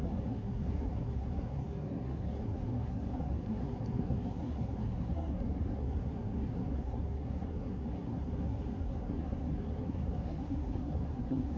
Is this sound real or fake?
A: fake